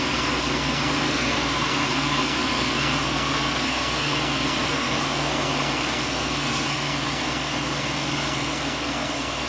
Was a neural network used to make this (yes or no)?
yes